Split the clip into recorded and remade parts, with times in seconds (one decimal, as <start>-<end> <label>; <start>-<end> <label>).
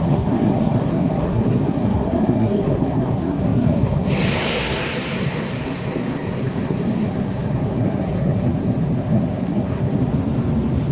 0.0-10.1 remade; 10.1-10.9 recorded